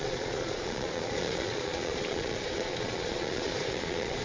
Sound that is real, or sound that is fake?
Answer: fake